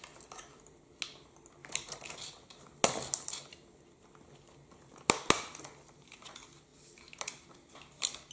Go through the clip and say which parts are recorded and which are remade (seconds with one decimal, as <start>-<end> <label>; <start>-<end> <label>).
0.0-8.3 recorded